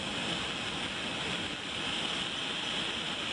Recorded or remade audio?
recorded